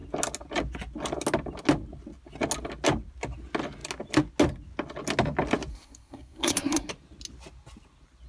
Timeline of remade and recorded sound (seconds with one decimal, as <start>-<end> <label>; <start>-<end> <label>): 0.0-5.7 recorded; 5.7-6.9 remade; 6.9-8.3 recorded